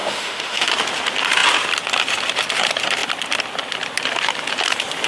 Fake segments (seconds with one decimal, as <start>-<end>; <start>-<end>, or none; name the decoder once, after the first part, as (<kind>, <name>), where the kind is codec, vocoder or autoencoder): 0.0-0.7 (autoencoder, DAC-VAE)